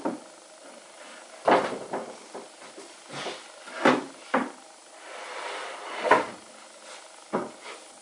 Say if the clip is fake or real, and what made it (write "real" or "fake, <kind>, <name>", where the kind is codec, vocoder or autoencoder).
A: real